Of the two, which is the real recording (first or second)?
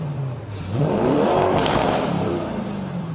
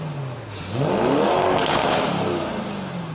second